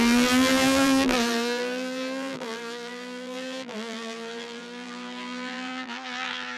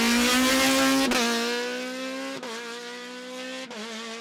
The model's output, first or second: first